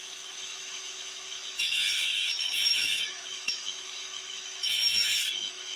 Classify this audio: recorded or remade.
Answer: remade